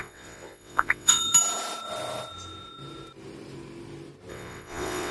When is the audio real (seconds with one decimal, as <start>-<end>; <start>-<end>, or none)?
1.2-4.3